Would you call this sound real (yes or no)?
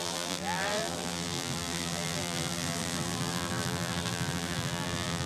no